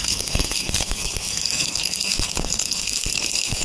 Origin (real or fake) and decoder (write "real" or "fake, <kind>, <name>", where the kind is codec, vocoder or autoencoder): fake, codec, SNAC